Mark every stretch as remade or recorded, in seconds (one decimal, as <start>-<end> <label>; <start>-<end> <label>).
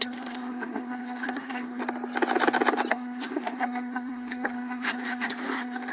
0.0-1.8 remade; 1.8-2.9 recorded; 2.9-5.9 remade